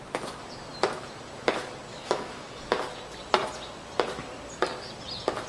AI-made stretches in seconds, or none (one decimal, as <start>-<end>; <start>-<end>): 1.9-2.6